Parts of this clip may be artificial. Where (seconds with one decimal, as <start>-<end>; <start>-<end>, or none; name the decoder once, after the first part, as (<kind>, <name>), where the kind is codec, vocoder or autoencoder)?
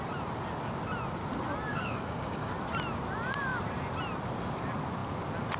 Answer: 1.7-2.5 (codec, DAC)